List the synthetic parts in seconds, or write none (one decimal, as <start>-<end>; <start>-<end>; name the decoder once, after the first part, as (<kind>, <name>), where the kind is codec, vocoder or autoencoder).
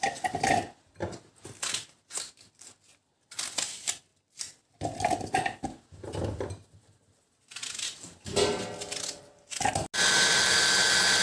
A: none